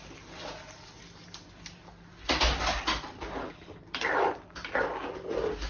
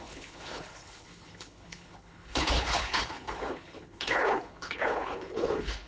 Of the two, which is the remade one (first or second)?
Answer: second